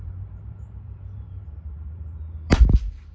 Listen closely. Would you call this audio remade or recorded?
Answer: remade